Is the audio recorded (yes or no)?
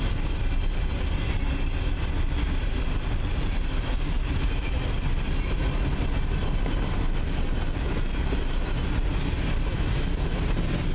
yes